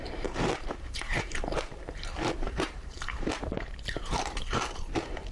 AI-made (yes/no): yes